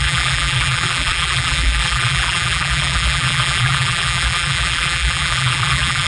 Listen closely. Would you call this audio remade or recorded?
remade